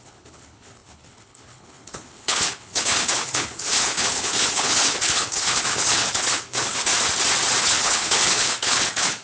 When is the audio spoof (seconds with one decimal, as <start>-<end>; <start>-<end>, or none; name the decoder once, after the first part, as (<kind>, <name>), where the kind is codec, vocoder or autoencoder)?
0.0-6.9 (codec, HILCodec); 7.6-9.2